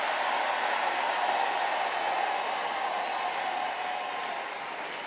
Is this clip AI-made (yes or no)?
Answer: no